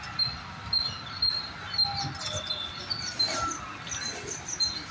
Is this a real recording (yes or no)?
yes